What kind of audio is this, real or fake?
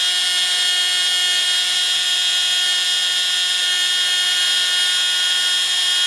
real